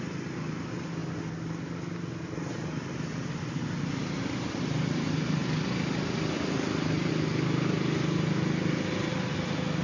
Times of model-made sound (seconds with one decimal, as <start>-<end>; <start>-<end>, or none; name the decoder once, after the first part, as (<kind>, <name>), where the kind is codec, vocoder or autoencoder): none